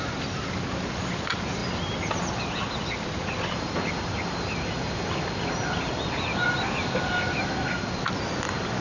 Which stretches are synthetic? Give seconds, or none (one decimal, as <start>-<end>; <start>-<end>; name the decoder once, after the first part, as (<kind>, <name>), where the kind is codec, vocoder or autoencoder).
none